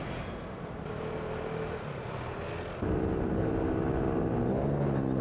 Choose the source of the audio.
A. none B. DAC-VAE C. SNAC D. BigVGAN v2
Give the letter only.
A